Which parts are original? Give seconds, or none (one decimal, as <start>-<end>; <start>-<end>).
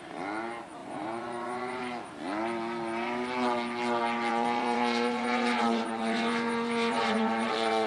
0.0-0.8; 1.8-4.3